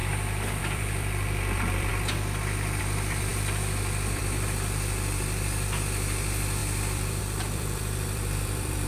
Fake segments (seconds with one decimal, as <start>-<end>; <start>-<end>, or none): 0.6-1.9; 2.8-8.9

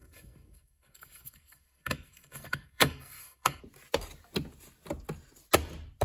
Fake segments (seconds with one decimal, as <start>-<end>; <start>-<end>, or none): 0.0-3.6

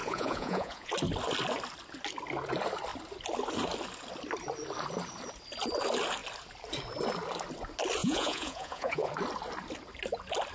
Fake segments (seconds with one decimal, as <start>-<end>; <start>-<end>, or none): 0.0-0.9; 8.0-9.1